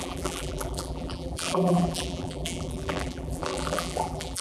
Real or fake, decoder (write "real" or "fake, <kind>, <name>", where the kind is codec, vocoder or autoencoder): fake, vocoder, BigVGAN v2